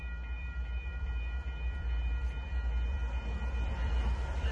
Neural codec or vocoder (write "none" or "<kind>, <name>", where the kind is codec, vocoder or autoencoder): vocoder, BigVGAN v2